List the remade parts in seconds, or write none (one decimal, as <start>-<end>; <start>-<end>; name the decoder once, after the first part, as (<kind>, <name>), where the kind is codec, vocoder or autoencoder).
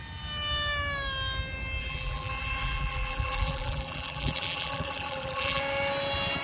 1.8-5.6 (vocoder, BigVGAN v2)